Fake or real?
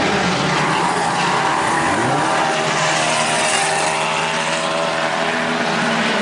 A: fake